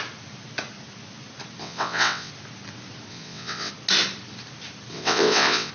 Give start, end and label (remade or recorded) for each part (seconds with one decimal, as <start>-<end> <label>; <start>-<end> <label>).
0.0-1.6 recorded; 1.6-2.3 remade; 2.3-3.1 recorded; 3.1-3.7 remade; 3.7-4.9 recorded; 4.9-5.7 remade